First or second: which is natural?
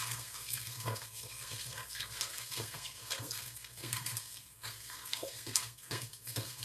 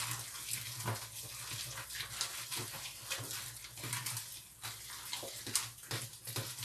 second